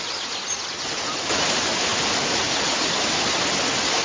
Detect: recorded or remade recorded